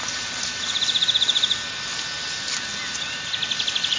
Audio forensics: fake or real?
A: real